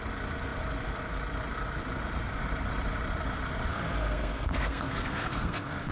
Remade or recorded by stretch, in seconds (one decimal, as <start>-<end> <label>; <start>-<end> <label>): 0.0-3.7 recorded; 3.7-5.9 remade